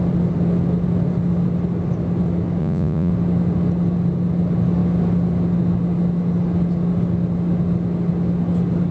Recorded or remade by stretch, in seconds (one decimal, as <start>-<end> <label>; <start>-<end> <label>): 0.0-2.6 recorded; 2.6-3.1 remade; 3.1-8.9 recorded